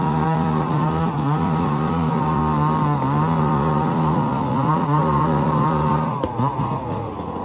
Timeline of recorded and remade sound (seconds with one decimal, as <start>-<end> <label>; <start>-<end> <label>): 0.0-2.4 remade; 2.4-3.4 recorded; 3.4-7.4 remade